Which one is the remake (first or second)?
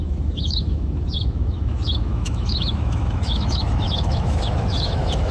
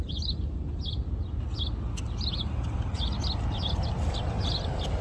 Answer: first